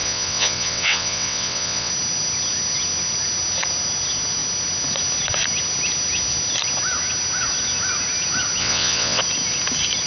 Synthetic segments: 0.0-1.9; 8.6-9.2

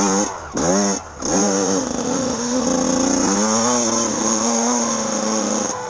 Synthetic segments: 1.4-2.6; 4.1-5.9

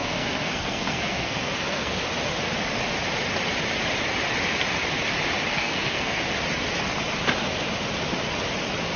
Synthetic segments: 0.0-2.0; 5.5-6.2

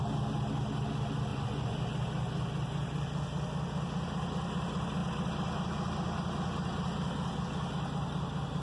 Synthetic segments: 1.3-1.8

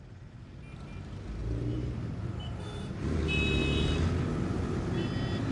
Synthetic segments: 1.4-3.2

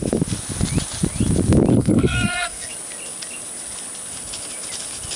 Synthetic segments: 1.7-2.7

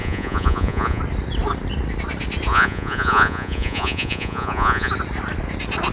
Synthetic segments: 0.0-1.0; 2.5-4.9

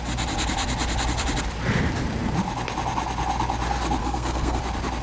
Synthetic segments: 4.0-4.6